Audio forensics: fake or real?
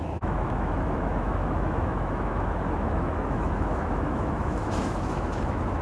fake